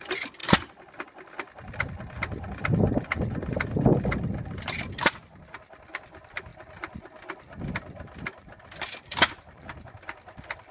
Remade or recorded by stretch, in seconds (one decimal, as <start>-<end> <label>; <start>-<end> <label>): 0.0-0.4 remade; 0.4-5.0 recorded; 5.0-6.5 remade; 6.5-7.6 recorded; 7.6-10.7 remade